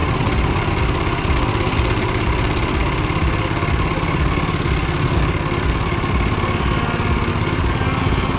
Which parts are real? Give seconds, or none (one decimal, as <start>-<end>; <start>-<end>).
0.0-7.3; 8.0-8.4